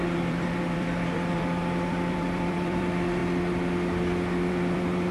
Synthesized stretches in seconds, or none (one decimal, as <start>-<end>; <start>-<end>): 0.0-3.2; 4.5-5.1

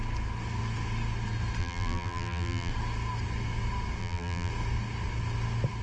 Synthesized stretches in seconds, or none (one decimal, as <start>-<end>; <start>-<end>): 1.6-2.7; 4.0-4.5